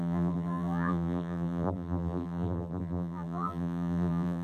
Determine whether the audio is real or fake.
fake